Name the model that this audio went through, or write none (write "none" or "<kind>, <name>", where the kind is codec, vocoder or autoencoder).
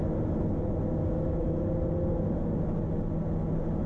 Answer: none